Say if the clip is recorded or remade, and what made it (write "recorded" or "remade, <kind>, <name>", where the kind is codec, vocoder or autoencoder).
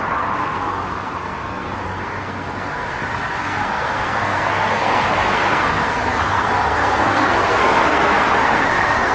remade, codec, SNAC